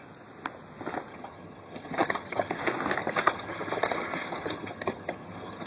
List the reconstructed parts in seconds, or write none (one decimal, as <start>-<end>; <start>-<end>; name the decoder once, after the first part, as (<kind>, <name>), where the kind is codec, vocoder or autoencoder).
1.1-2.6 (vocoder, HiFi-GAN); 3.0-5.7